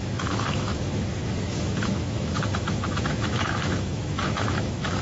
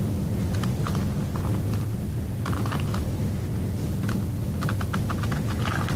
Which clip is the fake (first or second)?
first